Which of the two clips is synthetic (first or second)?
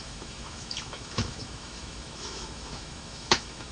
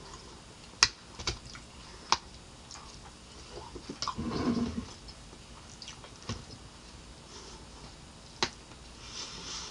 first